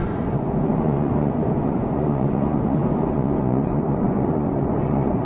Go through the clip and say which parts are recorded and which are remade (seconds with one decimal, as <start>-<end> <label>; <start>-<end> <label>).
0.0-5.2 remade